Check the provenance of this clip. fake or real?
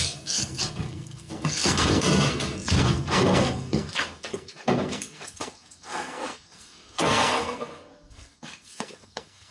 fake